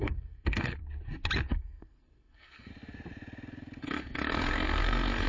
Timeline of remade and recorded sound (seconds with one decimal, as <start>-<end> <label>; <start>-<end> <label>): 0.0-0.8 remade; 0.8-1.5 recorded; 1.5-2.7 remade; 2.7-3.8 recorded; 3.8-5.3 remade